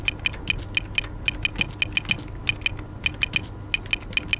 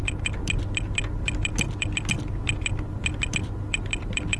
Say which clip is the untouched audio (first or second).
first